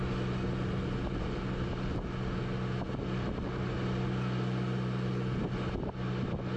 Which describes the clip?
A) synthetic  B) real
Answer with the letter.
B